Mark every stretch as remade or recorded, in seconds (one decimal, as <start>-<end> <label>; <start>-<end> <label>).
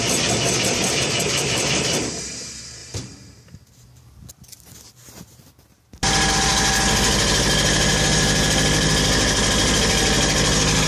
0.0-10.9 recorded